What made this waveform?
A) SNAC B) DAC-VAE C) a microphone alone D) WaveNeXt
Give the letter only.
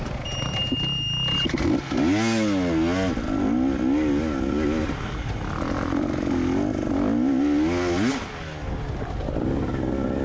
C